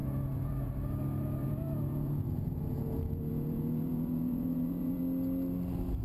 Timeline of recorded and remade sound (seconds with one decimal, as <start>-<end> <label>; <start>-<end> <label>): 0.0-0.7 remade; 0.7-1.4 recorded; 1.4-5.0 remade; 5.0-6.0 recorded